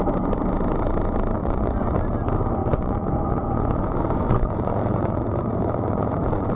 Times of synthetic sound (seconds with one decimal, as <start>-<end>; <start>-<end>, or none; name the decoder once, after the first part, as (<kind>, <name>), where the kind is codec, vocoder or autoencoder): 1.4-2.0 (vocoder, Vocos); 2.6-6.6